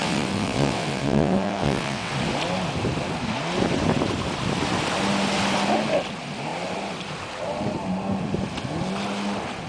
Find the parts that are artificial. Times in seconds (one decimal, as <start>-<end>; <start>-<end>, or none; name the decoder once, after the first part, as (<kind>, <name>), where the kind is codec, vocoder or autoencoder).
0.0-2.1 (vocoder, WaveNeXt)